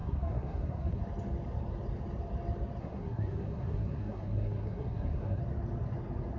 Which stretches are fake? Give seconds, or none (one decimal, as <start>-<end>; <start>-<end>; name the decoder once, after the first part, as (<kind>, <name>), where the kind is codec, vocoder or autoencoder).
0.0-1.0 (codec, SNAC); 2.8-5.4

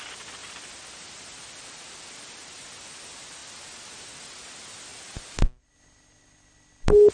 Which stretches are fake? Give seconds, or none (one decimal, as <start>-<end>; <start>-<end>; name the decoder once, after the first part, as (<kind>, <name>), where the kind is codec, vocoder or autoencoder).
none

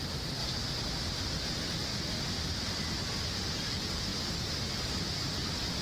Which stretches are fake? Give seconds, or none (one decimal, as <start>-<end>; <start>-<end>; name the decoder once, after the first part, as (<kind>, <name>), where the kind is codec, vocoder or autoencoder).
0.0-0.4 (vocoder, BigVGAN v2); 1.1-1.9; 3.2-5.8

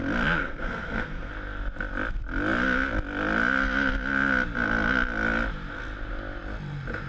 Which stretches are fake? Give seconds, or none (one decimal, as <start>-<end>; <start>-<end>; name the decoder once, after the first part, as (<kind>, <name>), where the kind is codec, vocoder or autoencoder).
0.4-1.3 (codec, SNAC)

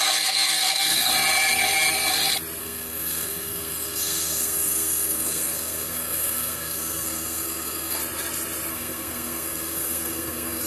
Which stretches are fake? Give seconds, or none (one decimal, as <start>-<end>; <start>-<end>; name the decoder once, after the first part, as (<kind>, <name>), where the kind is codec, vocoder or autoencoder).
0.0-1.1 (codec, SNAC); 2.6-8.0; 8.7-10.7

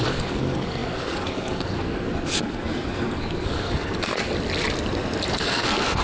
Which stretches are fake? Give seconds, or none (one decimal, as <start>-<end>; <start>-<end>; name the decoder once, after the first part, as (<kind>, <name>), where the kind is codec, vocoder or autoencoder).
0.0-4.3 (codec, SNAC); 5.4-6.0

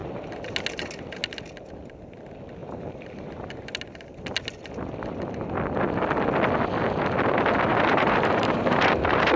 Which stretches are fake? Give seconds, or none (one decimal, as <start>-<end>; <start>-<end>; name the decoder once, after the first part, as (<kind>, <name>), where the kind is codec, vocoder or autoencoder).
2.6-3.7 (vocoder, BigVGAN v2); 7.7-9.4

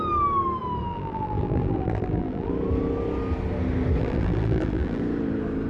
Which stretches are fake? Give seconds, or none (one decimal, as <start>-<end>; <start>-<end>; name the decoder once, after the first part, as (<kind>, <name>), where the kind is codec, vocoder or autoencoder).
0.9-2.5 (vocoder, BigVGAN v2); 4.0-5.0